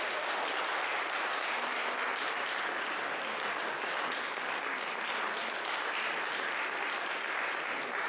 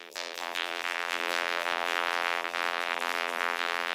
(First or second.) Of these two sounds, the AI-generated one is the second